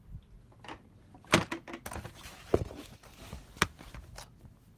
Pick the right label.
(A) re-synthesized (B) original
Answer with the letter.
B